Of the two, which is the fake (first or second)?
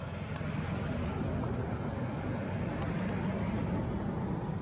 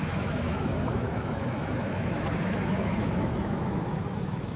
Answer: second